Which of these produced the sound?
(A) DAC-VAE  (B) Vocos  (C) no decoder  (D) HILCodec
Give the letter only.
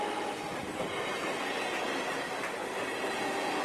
C